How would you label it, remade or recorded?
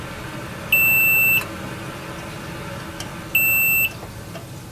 recorded